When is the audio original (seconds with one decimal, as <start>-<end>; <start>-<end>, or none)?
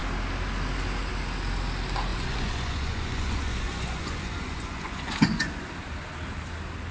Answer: 0.0-2.1; 5.7-6.9